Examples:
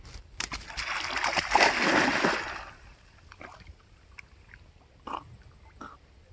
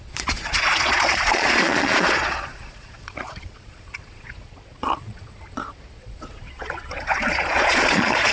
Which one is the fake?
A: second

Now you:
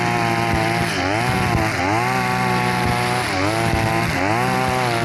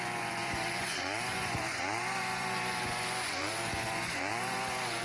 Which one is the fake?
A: second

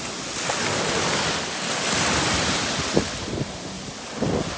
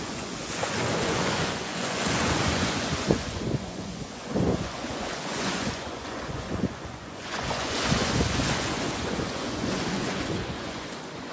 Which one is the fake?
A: second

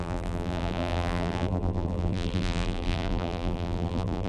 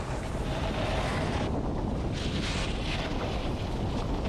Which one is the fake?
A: first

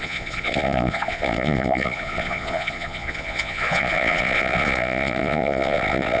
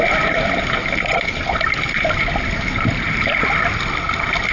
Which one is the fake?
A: first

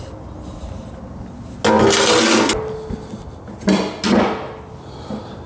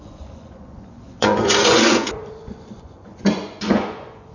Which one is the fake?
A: second